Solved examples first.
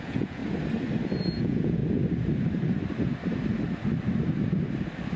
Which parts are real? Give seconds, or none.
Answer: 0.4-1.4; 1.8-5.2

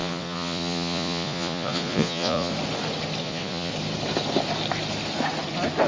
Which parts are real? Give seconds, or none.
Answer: 2.5-3.2; 3.7-5.9

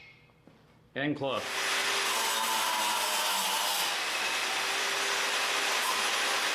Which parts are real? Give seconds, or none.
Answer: 0.0-6.5

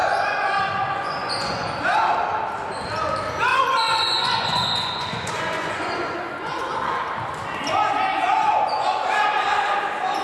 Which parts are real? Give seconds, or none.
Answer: 1.7-3.5; 7.0-8.1; 9.0-10.2

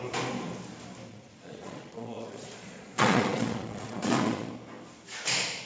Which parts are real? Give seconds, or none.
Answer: 0.0-1.1; 4.5-5.7